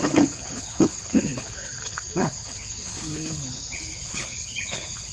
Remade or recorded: remade